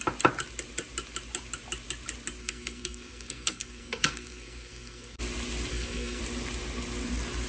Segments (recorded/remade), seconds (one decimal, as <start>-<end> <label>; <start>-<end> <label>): 0.0-2.4 recorded; 2.4-5.2 remade; 5.2-5.7 recorded; 5.7-6.2 remade; 6.2-7.5 recorded